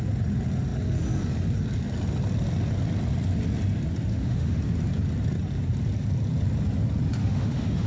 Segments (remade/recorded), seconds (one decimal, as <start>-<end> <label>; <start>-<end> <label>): 0.0-4.1 recorded; 4.1-4.6 remade; 4.6-7.2 recorded; 7.2-7.9 remade